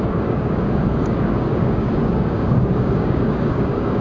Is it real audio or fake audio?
fake